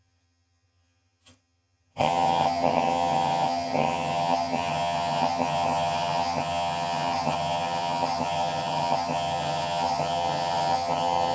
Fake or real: fake